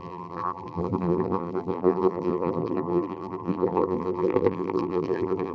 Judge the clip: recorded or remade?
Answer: remade